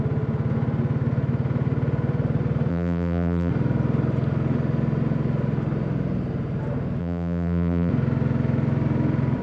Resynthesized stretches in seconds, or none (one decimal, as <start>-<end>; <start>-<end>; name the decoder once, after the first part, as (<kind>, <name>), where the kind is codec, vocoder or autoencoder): 2.7-3.5 (vocoder, BigVGAN v2); 7.0-7.9